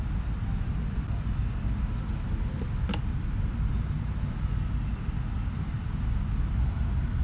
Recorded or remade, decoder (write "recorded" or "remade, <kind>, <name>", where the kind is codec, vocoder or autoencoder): recorded